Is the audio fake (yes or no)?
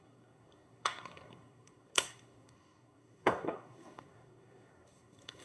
yes